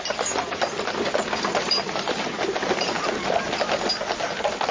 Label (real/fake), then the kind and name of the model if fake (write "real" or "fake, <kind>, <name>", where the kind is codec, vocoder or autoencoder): real